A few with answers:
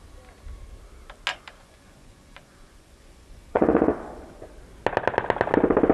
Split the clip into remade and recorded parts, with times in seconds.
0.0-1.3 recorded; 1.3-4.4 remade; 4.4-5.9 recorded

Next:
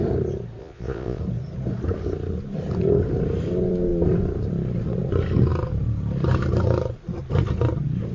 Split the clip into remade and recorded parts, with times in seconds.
0.0-0.6 recorded; 0.6-1.2 remade; 1.2-8.1 recorded